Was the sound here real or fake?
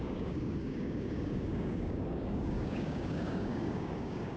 fake